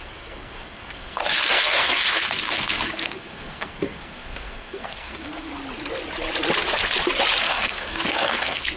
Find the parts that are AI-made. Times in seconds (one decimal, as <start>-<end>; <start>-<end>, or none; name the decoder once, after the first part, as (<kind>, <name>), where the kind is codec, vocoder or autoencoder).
0.0-5.5 (codec, SNAC); 7.4-8.8

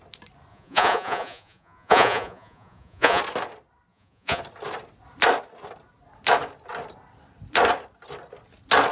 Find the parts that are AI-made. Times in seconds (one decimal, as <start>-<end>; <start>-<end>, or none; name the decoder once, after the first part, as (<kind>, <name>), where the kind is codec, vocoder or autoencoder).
0.5-3.2 (vocoder, Vocos); 3.9-4.4

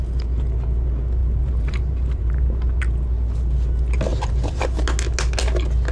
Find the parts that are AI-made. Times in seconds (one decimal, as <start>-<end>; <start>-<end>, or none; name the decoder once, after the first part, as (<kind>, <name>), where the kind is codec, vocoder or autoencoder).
1.2-2.8 (vocoder, BigVGAN v2); 4.1-4.6

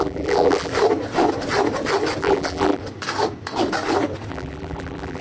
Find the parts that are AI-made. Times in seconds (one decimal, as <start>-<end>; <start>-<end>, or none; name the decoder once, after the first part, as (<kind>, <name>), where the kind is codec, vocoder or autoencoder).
0.0-0.7 (vocoder, BigVGAN v2); 2.2-2.8; 4.3-5.2

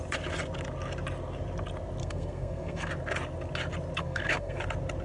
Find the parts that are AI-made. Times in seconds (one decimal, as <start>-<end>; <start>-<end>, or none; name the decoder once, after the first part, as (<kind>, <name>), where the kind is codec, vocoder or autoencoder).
2.0-2.9 (codec, SNAC); 4.0-4.6